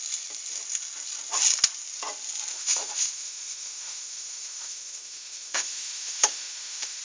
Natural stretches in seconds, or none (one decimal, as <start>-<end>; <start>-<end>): 0.0-2.5